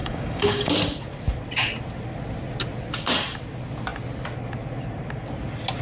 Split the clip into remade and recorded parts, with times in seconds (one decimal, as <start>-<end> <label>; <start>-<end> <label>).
0.0-0.7 remade; 0.7-5.8 recorded

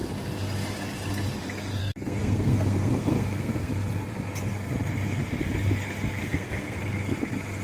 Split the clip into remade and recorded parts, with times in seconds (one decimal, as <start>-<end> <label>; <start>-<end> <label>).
0.0-1.8 recorded; 1.8-3.7 remade; 3.7-6.2 recorded; 6.2-6.8 remade; 6.8-7.6 recorded

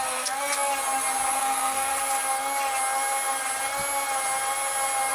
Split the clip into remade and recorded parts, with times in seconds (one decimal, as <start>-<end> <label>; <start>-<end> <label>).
0.0-0.7 remade; 0.7-1.3 recorded; 1.3-1.9 remade; 1.9-5.1 recorded

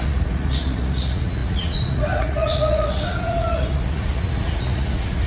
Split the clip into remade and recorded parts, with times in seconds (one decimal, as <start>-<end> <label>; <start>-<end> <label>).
0.0-5.3 remade

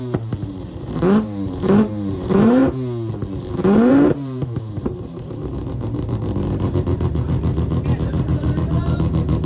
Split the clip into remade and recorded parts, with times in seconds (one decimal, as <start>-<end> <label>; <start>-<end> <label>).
0.0-2.6 remade; 2.6-3.9 recorded; 3.9-9.4 remade

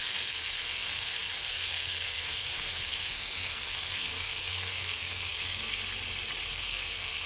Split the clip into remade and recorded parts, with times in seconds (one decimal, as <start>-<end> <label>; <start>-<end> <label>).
0.0-5.8 remade; 5.8-6.5 recorded; 6.5-7.3 remade

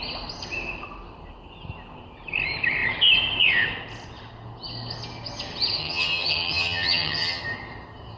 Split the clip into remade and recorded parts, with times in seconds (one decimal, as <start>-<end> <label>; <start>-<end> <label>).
0.0-5.8 recorded; 5.8-7.4 remade; 7.4-8.2 recorded